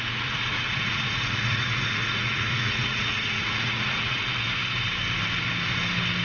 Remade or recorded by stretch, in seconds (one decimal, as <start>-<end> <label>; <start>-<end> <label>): 0.0-0.5 recorded; 0.5-4.2 remade; 4.2-6.2 recorded